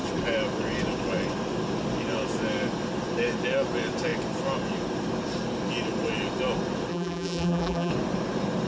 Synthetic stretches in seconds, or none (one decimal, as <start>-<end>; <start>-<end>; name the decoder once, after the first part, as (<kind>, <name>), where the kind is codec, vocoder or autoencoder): 6.9-7.9 (vocoder, BigVGAN v2)